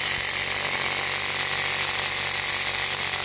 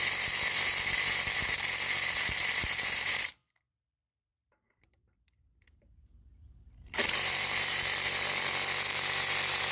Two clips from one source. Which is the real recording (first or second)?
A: first